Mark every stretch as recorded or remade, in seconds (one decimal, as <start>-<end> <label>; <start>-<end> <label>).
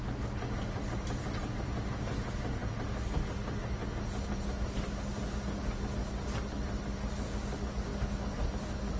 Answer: 0.0-9.0 recorded